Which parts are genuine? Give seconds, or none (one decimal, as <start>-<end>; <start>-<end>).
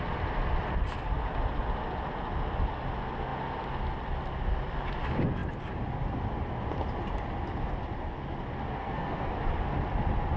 0.0-8.8; 9.3-10.4